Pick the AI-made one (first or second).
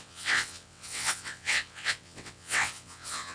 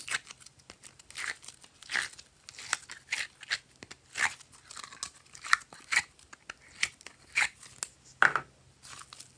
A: first